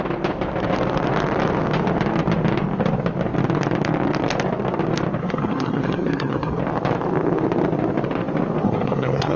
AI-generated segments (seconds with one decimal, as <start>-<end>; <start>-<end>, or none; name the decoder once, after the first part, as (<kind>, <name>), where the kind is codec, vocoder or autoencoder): 5.2-6.6 (codec, SNAC); 8.6-9.4